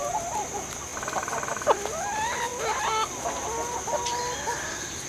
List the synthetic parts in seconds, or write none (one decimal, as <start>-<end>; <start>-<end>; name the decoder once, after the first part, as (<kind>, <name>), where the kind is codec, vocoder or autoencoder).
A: none